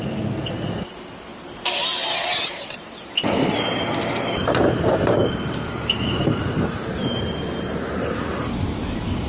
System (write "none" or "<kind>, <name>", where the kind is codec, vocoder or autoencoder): none